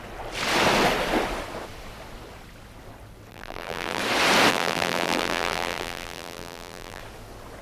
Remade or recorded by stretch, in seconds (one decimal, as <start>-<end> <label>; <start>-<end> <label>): 0.0-3.3 recorded; 3.3-4.0 remade; 4.0-4.5 recorded; 4.5-7.0 remade; 7.0-7.6 recorded